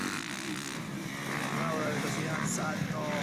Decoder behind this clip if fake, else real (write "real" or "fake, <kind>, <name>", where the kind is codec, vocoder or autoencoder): real